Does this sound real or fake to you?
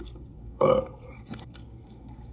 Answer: fake